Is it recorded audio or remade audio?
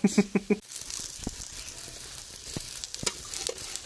recorded